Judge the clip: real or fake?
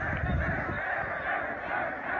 fake